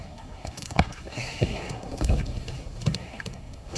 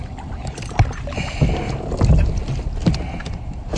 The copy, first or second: first